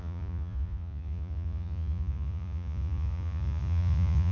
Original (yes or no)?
no